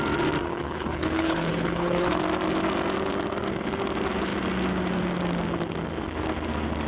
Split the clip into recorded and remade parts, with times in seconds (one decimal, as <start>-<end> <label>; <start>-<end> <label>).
0.0-0.5 recorded; 0.5-2.2 remade; 2.2-6.9 recorded